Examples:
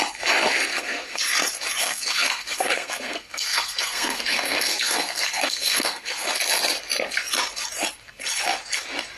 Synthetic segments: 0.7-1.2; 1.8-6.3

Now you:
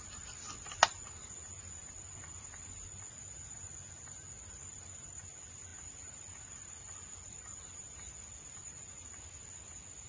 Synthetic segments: none